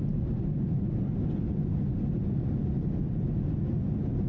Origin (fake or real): real